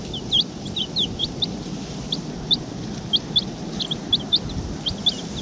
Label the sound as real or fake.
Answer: real